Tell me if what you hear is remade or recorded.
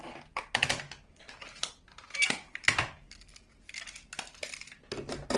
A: recorded